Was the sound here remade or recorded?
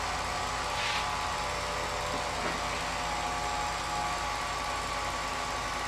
recorded